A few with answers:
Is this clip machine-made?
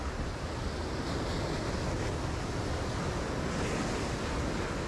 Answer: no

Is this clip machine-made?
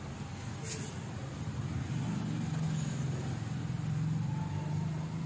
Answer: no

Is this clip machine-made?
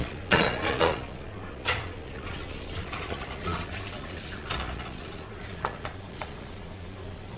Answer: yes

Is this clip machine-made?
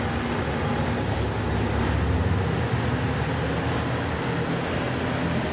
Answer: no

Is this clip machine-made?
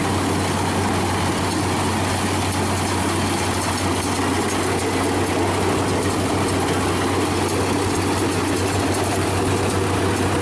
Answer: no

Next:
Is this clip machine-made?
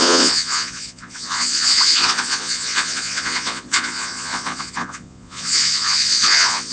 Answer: yes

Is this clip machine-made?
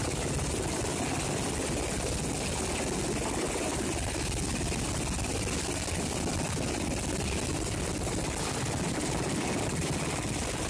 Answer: no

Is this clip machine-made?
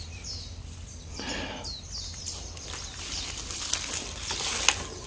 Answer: no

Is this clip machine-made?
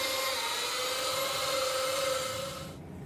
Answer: no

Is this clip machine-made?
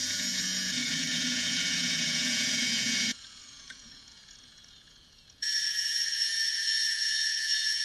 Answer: yes